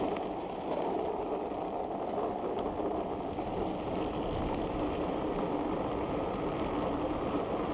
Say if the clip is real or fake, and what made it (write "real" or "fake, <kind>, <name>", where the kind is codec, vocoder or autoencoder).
real